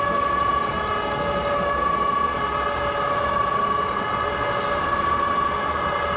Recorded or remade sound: recorded